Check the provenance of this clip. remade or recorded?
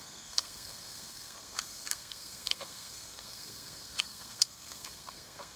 remade